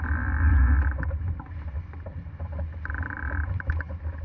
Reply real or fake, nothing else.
real